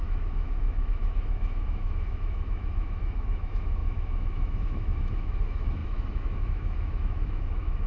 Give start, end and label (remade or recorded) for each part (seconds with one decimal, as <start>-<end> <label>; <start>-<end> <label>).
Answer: 0.0-7.9 remade